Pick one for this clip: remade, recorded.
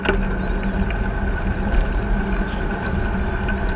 recorded